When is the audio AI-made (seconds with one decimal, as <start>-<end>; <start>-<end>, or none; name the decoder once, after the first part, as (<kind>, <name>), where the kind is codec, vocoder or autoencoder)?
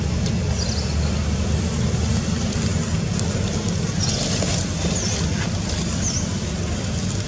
none